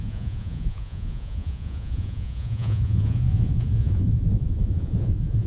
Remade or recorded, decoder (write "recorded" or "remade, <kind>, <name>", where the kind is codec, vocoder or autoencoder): remade, vocoder, Vocos